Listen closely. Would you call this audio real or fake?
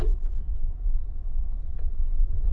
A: fake